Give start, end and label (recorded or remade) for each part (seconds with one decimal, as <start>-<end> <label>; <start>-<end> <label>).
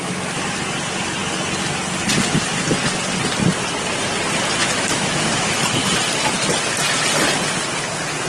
0.0-4.6 recorded; 4.6-5.9 remade; 5.9-8.3 recorded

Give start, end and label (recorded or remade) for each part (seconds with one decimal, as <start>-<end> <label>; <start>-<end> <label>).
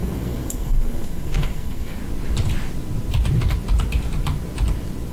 0.0-2.0 remade; 2.0-5.1 recorded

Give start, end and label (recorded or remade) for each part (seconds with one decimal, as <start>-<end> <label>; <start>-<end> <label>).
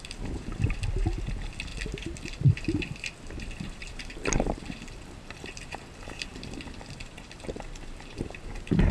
0.0-1.7 recorded; 1.7-2.8 remade; 2.8-3.8 recorded; 3.8-6.8 remade; 6.8-8.9 recorded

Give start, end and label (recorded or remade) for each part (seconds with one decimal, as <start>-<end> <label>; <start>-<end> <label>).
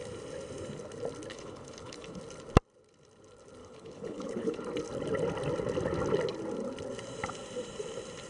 0.0-1.3 recorded; 1.3-2.2 remade; 2.2-3.6 recorded; 3.6-4.6 remade; 4.6-8.3 recorded